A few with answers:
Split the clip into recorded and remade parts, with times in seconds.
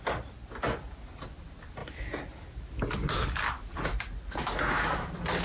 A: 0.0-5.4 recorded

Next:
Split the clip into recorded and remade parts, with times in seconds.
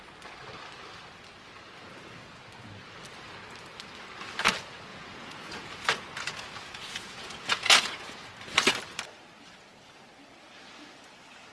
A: 0.0-4.9 recorded; 4.9-8.3 remade; 8.3-11.5 recorded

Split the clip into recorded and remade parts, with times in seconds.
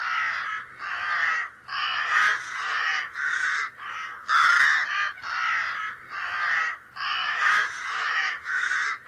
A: 0.0-7.2 recorded; 7.2-8.7 remade; 8.7-9.1 recorded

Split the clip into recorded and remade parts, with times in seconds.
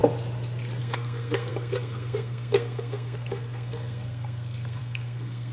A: 0.0-0.8 recorded; 0.8-5.5 remade